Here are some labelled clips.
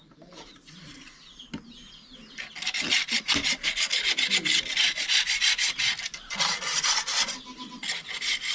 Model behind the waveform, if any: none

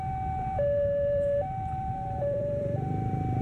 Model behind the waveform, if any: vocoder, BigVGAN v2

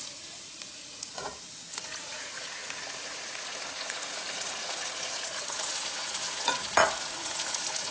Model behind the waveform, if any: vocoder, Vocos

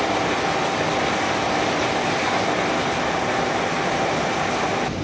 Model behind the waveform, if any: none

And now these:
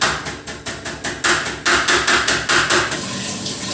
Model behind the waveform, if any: none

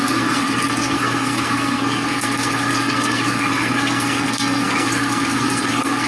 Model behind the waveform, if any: codec, SNAC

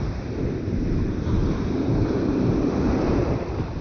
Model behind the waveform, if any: vocoder, BigVGAN v2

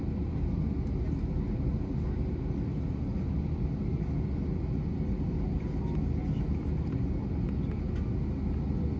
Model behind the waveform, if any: none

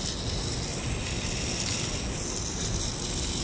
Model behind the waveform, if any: none